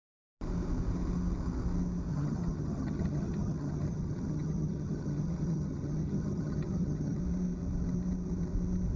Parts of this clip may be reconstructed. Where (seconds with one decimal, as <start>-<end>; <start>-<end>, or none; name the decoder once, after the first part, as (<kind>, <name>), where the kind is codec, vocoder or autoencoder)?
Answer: 2.1-7.2 (vocoder, HiFi-GAN)